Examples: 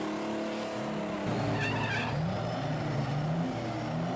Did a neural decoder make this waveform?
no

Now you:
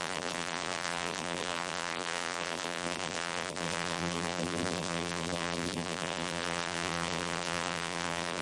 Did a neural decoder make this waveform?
yes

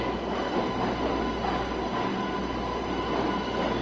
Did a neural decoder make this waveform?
no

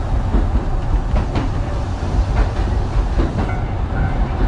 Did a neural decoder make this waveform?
no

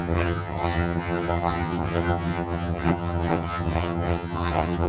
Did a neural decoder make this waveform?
yes